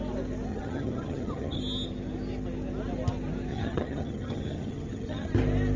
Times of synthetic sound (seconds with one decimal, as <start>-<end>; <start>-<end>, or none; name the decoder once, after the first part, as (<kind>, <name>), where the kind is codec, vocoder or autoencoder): 0.5-1.6 (vocoder, HiFi-GAN); 3.5-5.3